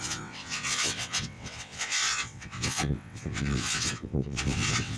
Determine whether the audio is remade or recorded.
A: remade